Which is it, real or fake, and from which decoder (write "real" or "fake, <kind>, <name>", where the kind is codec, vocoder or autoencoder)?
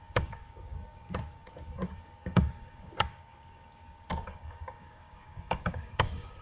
fake, codec, DAC